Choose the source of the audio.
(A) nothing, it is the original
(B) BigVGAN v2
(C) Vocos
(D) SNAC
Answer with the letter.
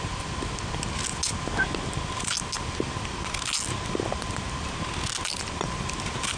A